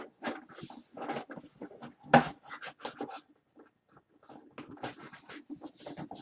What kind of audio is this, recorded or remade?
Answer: recorded